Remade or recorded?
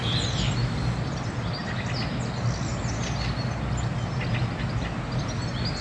recorded